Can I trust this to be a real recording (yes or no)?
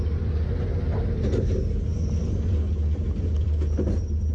yes